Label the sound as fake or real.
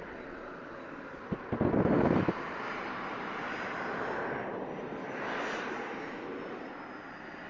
real